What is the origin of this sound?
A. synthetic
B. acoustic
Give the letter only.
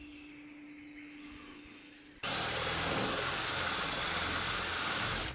B